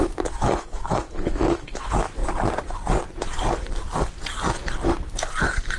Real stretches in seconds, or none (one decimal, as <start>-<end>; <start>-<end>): 2.2-5.8